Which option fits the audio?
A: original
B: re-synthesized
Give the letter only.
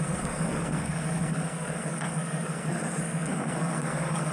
B